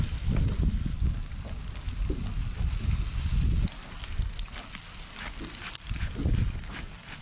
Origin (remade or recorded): recorded